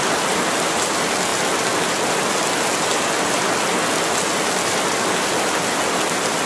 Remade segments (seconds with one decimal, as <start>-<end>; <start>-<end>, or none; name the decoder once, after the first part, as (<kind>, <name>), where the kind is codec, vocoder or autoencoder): none